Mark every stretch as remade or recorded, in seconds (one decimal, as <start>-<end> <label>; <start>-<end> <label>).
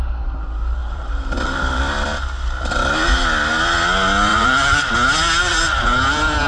0.0-0.8 recorded; 0.8-1.8 remade; 1.8-4.3 recorded; 4.3-4.9 remade; 4.9-6.5 recorded